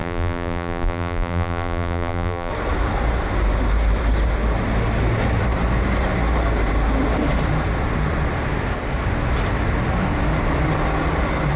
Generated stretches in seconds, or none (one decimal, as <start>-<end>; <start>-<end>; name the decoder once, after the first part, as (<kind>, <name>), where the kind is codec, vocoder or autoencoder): 0.0-2.5 (vocoder, BigVGAN v2)